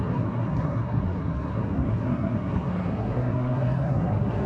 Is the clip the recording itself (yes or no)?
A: no